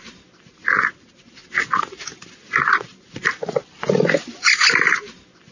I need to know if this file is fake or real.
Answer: real